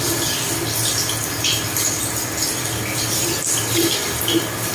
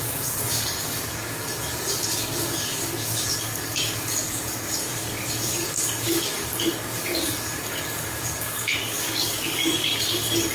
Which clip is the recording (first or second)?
first